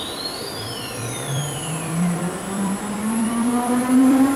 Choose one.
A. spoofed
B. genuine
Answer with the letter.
A